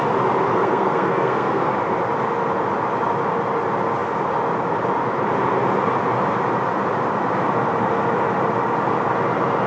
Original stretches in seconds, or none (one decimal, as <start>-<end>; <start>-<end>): 0.0-0.5; 1.7-9.7